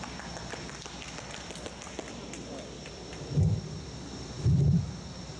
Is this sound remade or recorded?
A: recorded